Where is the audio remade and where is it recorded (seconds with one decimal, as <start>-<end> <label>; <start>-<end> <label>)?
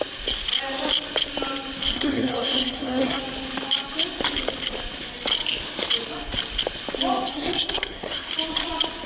0.0-1.9 recorded; 1.9-3.2 remade; 3.2-7.3 recorded; 7.3-8.3 remade; 8.3-9.1 recorded